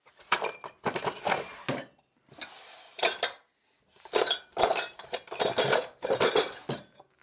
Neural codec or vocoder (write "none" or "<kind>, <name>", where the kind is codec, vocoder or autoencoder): none